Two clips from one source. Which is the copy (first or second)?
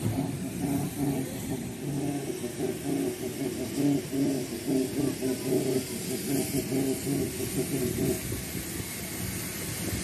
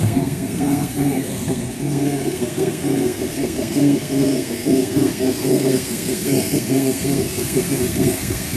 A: second